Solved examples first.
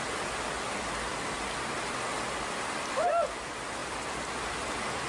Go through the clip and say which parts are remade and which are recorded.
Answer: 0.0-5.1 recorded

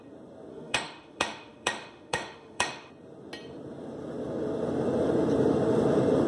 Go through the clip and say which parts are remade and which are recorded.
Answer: 0.0-0.5 recorded; 0.5-2.9 remade; 2.9-6.3 recorded

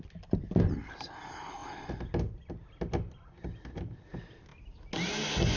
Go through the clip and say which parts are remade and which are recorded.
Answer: 0.0-5.6 recorded

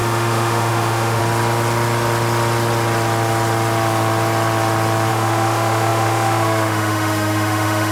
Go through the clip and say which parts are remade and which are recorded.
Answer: 0.0-1.2 remade; 1.2-5.1 recorded; 5.1-7.9 remade

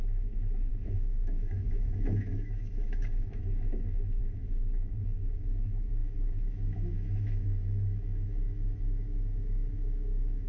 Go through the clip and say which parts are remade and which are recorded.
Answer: 0.0-10.5 remade

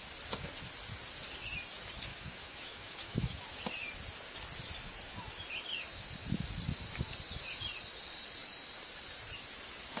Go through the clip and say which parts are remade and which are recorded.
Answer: 0.0-2.1 recorded; 2.1-3.4 remade; 3.4-10.0 recorded

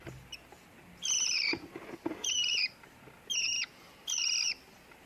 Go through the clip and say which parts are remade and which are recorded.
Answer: 0.0-5.1 recorded

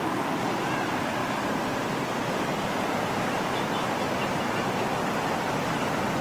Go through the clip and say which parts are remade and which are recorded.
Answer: 0.0-6.2 recorded